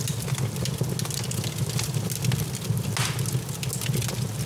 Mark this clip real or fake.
real